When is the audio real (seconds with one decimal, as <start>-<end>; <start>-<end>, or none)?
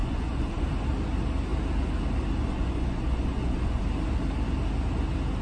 0.6-2.5; 3.8-5.4